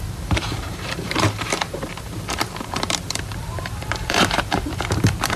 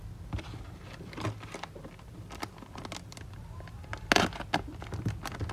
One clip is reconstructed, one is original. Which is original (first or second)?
second